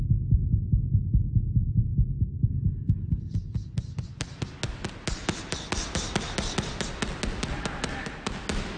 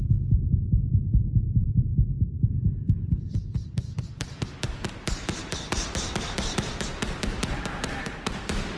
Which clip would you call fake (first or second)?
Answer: second